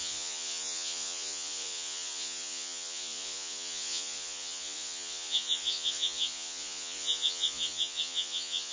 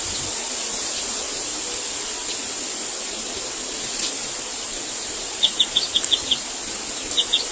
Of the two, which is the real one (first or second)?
second